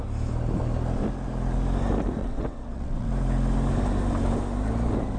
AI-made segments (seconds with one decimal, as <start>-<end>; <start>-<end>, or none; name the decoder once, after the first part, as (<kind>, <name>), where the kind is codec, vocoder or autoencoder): 2.2-3.1 (vocoder, WaveNeXt)